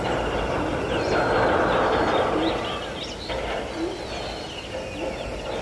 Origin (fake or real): real